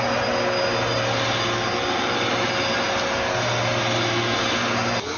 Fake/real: real